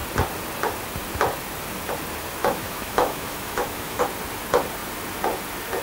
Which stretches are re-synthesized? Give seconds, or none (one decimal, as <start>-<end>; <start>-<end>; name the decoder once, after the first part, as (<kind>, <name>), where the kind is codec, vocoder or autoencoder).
2.4-4.0 (autoencoder, DAC-VAE)